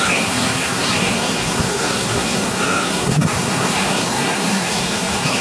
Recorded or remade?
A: remade